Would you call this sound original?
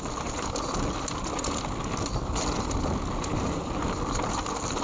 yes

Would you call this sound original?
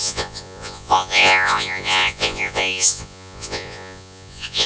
no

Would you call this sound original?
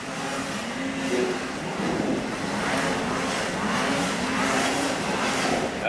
yes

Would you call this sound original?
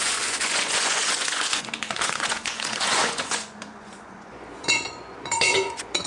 no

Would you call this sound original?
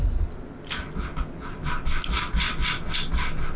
yes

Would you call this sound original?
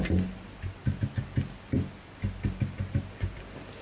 yes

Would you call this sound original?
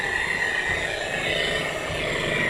yes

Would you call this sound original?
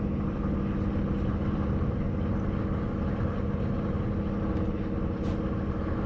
yes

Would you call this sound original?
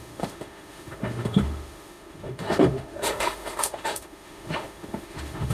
no